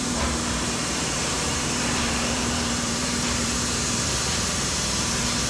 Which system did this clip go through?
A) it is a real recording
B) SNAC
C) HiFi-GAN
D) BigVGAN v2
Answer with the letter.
D